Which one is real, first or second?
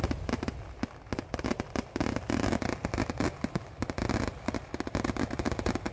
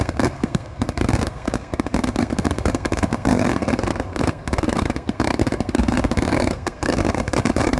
first